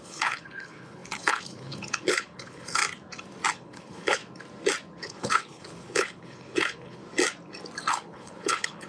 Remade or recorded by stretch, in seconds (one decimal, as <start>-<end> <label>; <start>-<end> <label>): 0.0-2.8 remade; 2.8-3.5 recorded; 3.5-4.2 remade; 4.2-5.0 recorded; 5.0-7.0 remade; 7.0-7.9 recorded; 7.9-8.9 remade